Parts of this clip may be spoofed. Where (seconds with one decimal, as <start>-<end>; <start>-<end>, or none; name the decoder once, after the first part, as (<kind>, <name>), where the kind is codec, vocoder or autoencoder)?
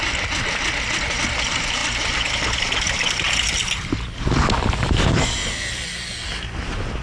none